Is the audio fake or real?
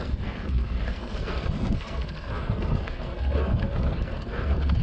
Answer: fake